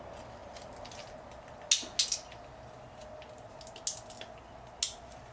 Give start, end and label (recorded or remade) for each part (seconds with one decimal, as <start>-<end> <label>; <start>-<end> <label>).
0.0-5.3 recorded